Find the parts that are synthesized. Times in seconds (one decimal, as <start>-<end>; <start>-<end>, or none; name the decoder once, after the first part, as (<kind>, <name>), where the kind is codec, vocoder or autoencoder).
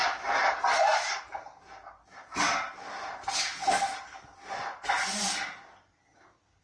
none